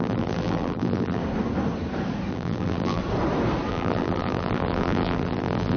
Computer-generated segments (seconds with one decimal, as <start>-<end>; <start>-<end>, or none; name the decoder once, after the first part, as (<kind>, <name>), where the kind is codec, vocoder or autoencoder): 0.0-1.2 (vocoder, BigVGAN v2); 2.3-3.0; 3.7-5.8

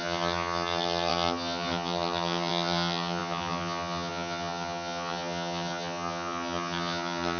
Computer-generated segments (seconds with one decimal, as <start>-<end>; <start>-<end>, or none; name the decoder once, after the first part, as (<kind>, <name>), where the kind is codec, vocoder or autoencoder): 0.0-7.4 (vocoder, HiFi-GAN)

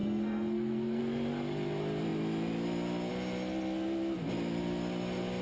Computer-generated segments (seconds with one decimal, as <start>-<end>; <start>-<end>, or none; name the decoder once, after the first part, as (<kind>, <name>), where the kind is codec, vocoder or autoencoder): 0.0-1.0 (codec, SNAC)